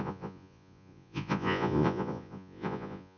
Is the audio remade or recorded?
remade